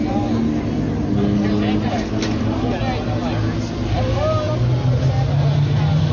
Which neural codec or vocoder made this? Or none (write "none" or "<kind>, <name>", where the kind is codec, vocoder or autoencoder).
none